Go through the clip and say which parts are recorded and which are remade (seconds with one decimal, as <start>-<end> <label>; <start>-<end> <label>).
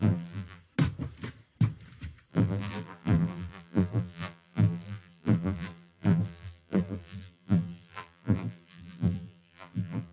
0.0-0.6 remade; 0.6-2.3 recorded; 2.3-10.1 remade